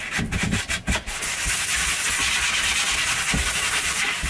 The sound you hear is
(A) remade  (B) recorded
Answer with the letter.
B